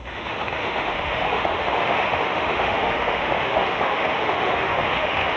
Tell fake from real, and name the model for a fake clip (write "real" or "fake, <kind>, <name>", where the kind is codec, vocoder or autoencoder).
fake, autoencoder, DAC-VAE